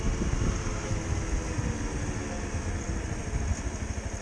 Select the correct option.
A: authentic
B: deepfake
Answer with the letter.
A